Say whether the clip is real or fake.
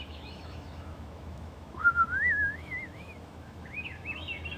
fake